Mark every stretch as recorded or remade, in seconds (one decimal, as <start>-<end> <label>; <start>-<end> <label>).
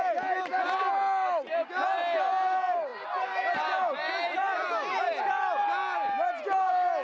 0.0-2.9 recorded; 2.9-4.7 remade; 4.7-7.0 recorded